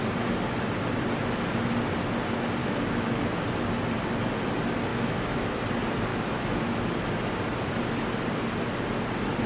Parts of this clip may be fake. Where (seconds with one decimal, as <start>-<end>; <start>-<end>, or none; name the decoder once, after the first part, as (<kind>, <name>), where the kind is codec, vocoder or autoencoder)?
2.6-3.3 (autoencoder, DAC-VAE); 4.9-5.6; 6.1-6.8